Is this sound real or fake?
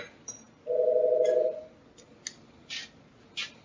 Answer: real